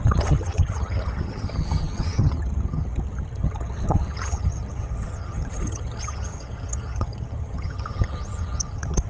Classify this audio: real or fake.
fake